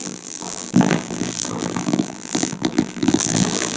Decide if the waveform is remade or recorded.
remade